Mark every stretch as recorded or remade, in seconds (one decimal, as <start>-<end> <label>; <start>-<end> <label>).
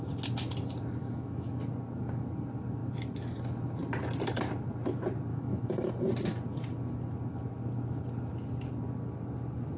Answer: 0.0-1.0 recorded; 1.0-1.5 remade; 1.5-5.3 recorded; 5.3-5.9 remade; 5.9-9.8 recorded